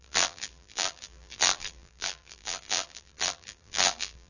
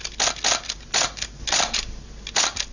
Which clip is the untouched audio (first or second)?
second